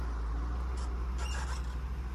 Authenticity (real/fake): real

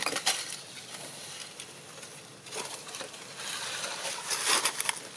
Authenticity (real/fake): real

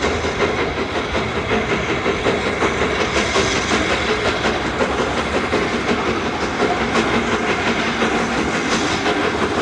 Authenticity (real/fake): real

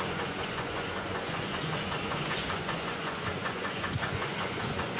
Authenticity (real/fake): fake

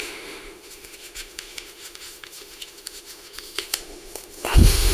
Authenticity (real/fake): fake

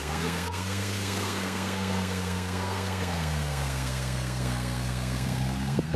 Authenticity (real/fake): fake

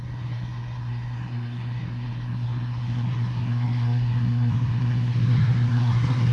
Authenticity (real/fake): fake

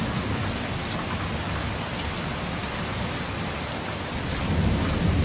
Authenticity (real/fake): real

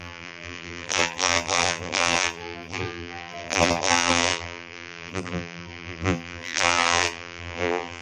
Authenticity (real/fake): fake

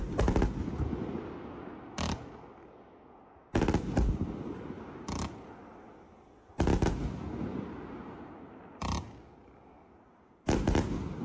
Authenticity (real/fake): real